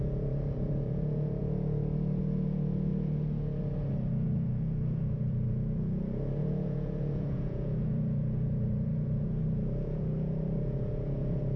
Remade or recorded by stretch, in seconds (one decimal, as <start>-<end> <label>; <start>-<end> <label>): 0.0-1.4 remade; 1.4-2.2 recorded; 2.2-2.9 remade; 2.9-4.1 recorded; 4.1-11.6 remade

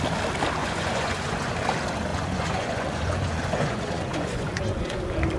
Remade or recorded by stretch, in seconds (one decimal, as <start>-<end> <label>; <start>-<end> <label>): 0.0-0.6 recorded; 0.6-1.5 remade; 1.5-2.1 recorded; 2.1-5.0 remade; 5.0-5.4 recorded

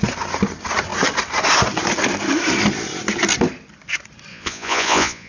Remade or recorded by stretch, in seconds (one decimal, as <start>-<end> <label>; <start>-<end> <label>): 0.0-4.3 recorded; 4.3-5.3 remade

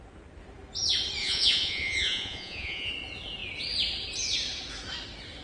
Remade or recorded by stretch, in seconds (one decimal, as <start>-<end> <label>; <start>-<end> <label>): 0.0-1.2 recorded; 1.2-2.9 remade; 2.9-5.4 recorded

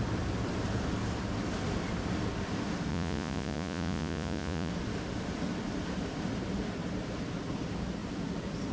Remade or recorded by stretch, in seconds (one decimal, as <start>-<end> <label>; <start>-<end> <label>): 0.0-2.9 recorded; 2.9-4.7 remade; 4.7-8.7 recorded

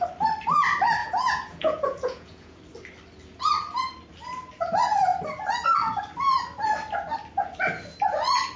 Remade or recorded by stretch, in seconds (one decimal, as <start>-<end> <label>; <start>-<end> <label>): 0.0-1.0 recorded; 1.0-2.6 remade; 2.6-8.6 recorded

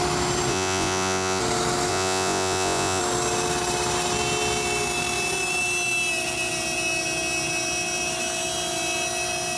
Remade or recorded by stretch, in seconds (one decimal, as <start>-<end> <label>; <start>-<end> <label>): 0.0-0.5 recorded; 0.5-1.4 remade; 1.4-1.9 recorded; 1.9-3.0 remade; 3.0-9.6 recorded